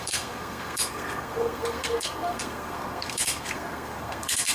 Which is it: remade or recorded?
remade